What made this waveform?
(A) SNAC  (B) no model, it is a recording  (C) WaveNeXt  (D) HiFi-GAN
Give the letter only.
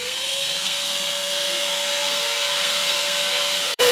A